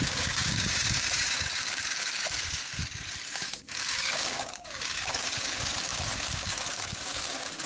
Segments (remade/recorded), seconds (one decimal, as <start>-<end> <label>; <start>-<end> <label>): 0.0-2.6 remade; 2.6-3.3 recorded; 3.3-7.7 remade